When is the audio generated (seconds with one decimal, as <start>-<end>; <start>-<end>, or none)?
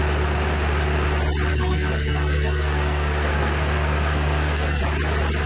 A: 1.5-4.8